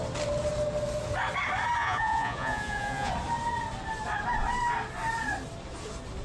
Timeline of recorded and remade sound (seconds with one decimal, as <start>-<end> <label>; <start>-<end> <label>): 0.0-1.8 recorded; 1.8-3.1 remade; 3.1-6.2 recorded